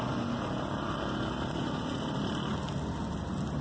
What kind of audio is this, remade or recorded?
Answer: recorded